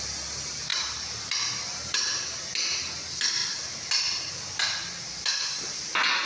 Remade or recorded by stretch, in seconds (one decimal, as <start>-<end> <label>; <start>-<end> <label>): 0.0-0.7 recorded; 0.7-2.4 remade; 2.4-6.3 recorded